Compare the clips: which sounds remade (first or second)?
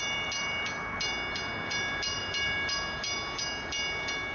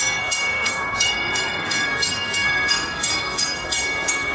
second